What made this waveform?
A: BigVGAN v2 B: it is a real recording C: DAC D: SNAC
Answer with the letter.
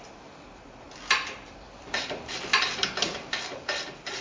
A